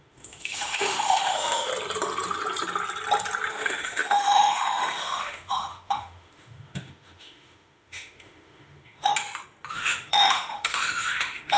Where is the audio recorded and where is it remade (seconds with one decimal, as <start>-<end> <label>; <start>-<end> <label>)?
0.0-1.7 remade; 1.7-3.5 recorded; 3.5-9.1 remade; 9.1-9.7 recorded; 9.7-11.6 remade